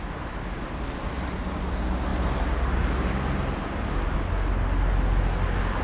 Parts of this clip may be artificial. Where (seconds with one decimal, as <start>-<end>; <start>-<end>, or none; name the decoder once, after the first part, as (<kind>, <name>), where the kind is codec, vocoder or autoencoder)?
none